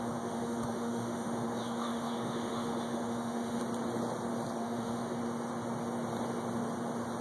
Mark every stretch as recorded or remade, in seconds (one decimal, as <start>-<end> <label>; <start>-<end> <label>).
0.0-3.6 remade; 3.6-4.6 recorded; 4.6-5.2 remade; 5.2-7.2 recorded